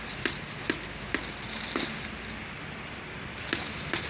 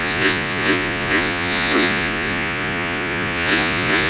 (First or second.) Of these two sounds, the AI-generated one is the second